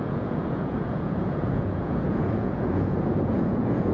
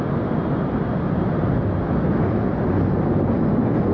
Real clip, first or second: second